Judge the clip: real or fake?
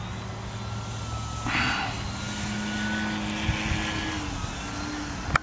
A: real